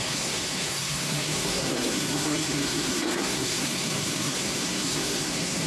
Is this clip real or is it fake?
fake